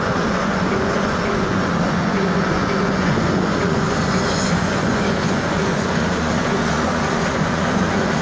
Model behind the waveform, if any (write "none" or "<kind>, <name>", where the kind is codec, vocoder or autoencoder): vocoder, Vocos